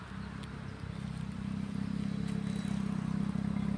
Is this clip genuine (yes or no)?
yes